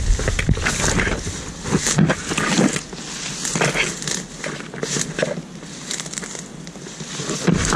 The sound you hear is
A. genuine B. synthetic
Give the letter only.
A